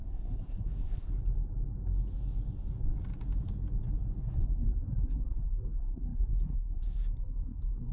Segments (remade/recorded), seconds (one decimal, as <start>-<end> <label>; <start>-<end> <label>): 0.0-1.1 remade; 1.1-4.2 recorded; 4.2-7.9 remade

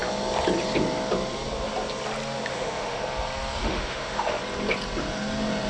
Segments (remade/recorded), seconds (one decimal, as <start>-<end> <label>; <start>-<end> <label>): 0.0-2.5 recorded; 2.5-3.0 remade; 3.0-3.6 recorded; 3.6-4.4 remade; 4.4-5.7 recorded

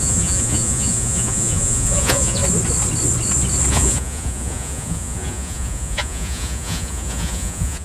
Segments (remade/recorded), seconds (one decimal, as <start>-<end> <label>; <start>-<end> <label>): 0.0-2.4 remade; 2.4-3.7 recorded; 3.7-7.8 remade

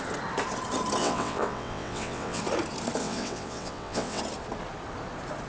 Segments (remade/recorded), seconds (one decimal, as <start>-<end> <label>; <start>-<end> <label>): 0.0-1.0 recorded; 1.0-2.4 remade; 2.4-3.0 recorded; 3.0-4.2 remade; 4.2-5.5 recorded

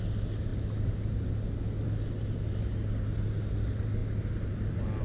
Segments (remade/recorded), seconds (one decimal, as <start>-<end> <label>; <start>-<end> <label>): 0.0-5.0 recorded

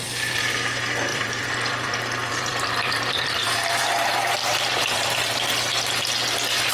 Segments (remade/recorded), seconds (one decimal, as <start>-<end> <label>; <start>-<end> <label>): 0.0-1.1 recorded; 1.1-3.7 remade; 3.7-4.4 recorded; 4.4-5.7 remade; 5.7-6.7 recorded

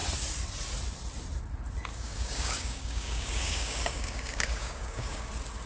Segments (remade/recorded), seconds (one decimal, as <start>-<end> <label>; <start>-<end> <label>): 0.0-1.9 recorded; 1.9-5.3 remade; 5.3-5.7 recorded